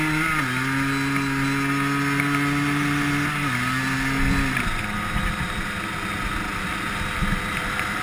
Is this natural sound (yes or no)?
yes